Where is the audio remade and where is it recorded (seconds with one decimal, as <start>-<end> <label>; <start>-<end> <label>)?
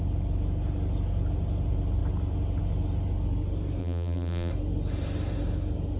0.0-3.8 recorded; 3.8-4.5 remade; 4.5-6.0 recorded